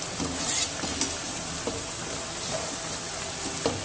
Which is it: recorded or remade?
recorded